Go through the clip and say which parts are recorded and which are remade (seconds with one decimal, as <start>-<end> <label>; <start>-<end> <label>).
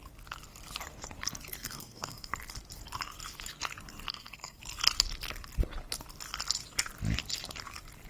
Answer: 0.0-1.6 recorded; 1.6-2.3 remade; 2.3-4.1 recorded; 4.1-4.6 remade; 4.6-8.1 recorded